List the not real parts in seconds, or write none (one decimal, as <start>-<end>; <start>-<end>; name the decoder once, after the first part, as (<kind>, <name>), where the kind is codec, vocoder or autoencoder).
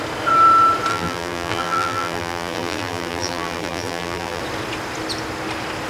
0.9-4.4 (vocoder, BigVGAN v2)